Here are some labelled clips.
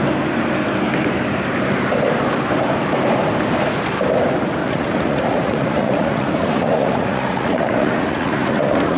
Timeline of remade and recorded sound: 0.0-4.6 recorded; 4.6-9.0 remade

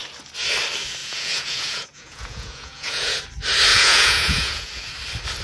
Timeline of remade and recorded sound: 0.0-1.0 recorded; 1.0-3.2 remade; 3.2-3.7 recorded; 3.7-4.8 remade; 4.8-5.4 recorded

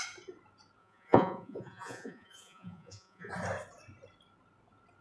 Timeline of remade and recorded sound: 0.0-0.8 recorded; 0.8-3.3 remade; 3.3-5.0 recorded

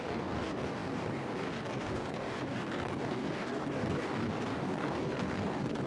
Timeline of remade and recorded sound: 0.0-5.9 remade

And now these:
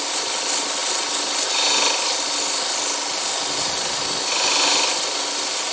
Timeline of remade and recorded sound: 0.0-5.7 recorded

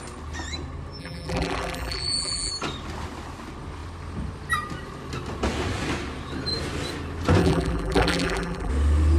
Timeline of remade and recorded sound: 0.0-1.0 recorded; 1.0-2.5 remade; 2.5-7.4 recorded; 7.4-8.7 remade; 8.7-9.2 recorded

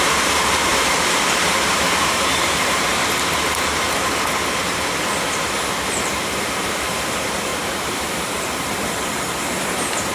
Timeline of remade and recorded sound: 0.0-2.9 remade; 2.9-5.9 recorded; 5.9-10.1 remade

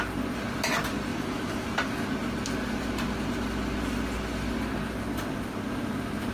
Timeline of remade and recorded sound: 0.0-1.1 recorded; 1.1-1.9 remade; 1.9-6.3 recorded